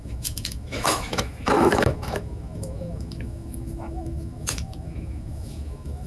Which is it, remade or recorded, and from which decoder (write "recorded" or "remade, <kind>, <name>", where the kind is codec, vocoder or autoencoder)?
remade, autoencoder, DAC-VAE